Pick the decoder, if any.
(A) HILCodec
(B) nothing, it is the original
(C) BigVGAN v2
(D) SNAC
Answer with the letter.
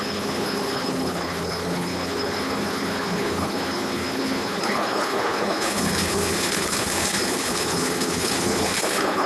A